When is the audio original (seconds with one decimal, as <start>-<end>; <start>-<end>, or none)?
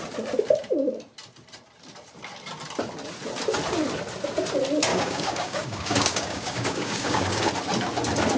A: 0.0-4.9; 7.5-8.4